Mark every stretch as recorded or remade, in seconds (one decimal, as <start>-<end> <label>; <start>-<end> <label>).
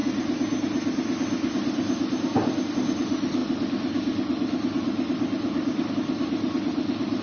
0.0-7.2 recorded